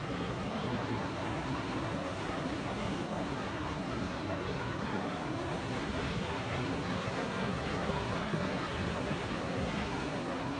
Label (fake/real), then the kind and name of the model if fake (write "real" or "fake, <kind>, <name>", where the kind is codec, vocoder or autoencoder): fake, codec, SNAC